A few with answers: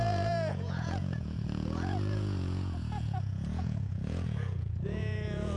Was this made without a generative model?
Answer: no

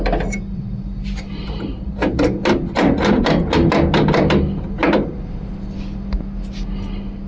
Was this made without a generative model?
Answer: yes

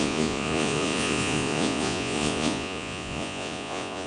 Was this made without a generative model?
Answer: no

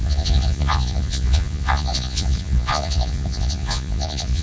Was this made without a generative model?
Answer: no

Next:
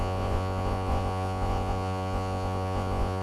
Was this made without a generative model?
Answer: no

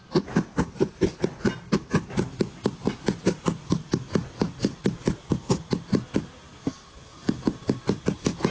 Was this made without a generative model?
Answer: yes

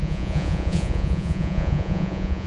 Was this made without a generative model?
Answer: no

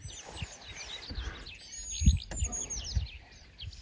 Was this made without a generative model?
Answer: yes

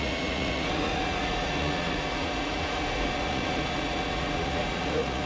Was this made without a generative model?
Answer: no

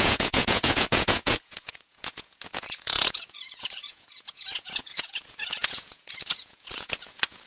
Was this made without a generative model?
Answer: no